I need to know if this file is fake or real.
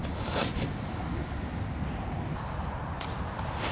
real